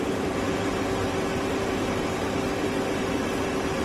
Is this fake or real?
fake